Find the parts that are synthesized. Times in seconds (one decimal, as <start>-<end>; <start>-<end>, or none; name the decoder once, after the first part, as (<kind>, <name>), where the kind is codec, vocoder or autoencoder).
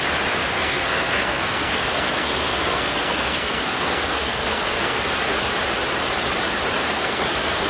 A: 0.4-5.0 (codec, SNAC); 6.8-7.7